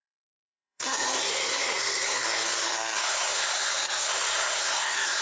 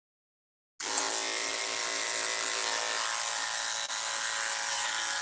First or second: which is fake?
first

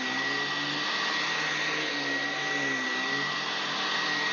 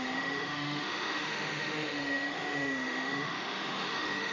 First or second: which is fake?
second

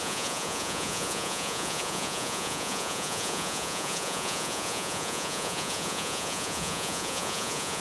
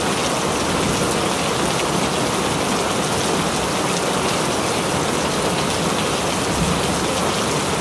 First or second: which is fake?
first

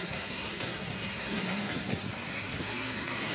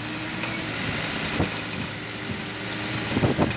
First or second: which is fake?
first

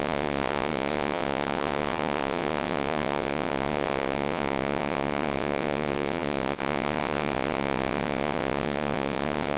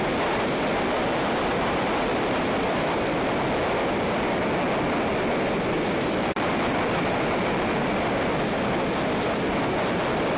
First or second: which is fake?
first